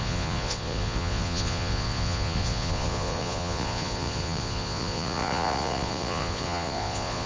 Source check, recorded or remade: remade